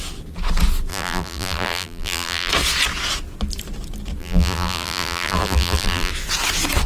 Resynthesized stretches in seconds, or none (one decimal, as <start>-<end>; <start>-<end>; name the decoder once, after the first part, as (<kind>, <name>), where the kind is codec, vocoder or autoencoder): 0.9-2.5 (vocoder, BigVGAN v2); 4.2-6.1